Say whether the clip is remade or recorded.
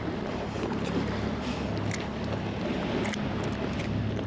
recorded